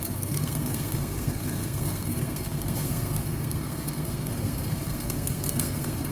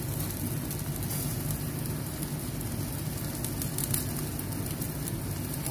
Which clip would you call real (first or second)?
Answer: second